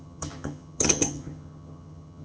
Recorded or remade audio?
remade